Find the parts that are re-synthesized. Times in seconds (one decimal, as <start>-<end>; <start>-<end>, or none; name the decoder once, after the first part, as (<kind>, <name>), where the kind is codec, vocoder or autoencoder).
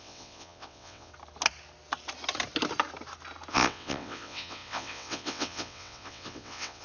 0.0-1.1 (vocoder, WaveNeXt); 3.5-6.8